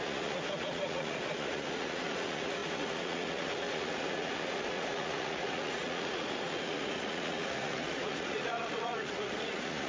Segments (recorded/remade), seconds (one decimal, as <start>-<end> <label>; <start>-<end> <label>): 0.0-9.9 remade